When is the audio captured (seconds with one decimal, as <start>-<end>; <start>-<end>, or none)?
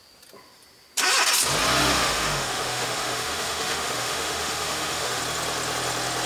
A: 0.0-1.8; 5.2-6.3